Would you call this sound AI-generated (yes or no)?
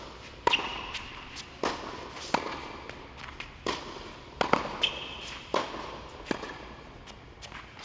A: no